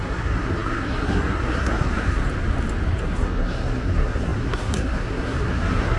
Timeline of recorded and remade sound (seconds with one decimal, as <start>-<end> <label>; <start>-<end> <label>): 0.0-2.2 remade; 2.2-3.0 recorded; 3.0-6.0 remade